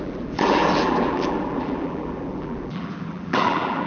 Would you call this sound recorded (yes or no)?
no